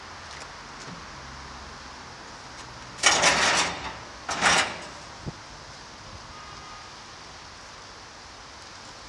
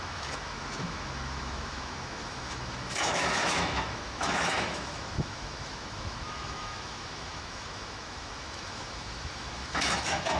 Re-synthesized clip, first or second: second